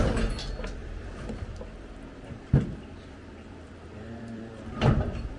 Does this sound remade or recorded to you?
remade